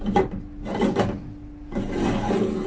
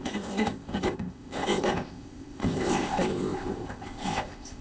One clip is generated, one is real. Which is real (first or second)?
first